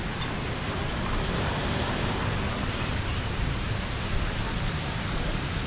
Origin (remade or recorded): remade